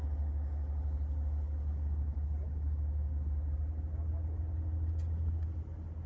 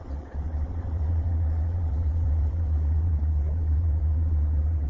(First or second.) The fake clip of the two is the second